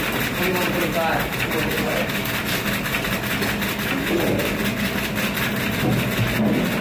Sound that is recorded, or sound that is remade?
recorded